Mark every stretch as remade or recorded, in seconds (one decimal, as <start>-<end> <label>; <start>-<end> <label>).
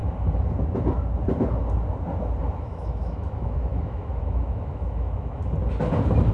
0.0-2.4 recorded; 2.4-5.4 remade; 5.4-6.3 recorded